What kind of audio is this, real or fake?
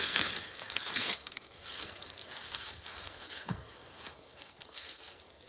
fake